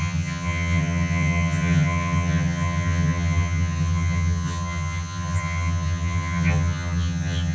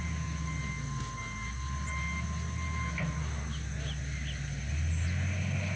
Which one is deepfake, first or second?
first